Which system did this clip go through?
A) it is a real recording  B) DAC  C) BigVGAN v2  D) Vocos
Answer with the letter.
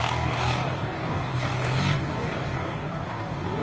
B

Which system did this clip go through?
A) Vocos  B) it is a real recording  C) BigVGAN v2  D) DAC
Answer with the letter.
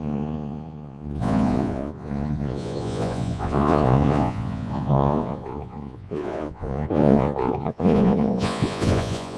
A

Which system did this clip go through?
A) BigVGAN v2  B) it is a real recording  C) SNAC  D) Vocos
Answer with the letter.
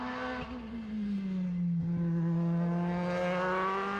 B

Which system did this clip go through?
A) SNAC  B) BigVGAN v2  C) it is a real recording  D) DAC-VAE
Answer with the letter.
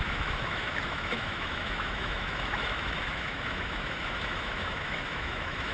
D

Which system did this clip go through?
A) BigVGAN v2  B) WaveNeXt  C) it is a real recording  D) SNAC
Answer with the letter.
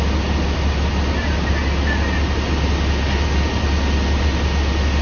C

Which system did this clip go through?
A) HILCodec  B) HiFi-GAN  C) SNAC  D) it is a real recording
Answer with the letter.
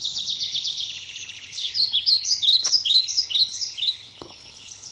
A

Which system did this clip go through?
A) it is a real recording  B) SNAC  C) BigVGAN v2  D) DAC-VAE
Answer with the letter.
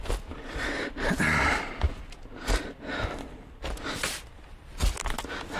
A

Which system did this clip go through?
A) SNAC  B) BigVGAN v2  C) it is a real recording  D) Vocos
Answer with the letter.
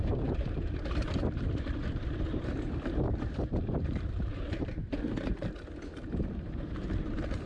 B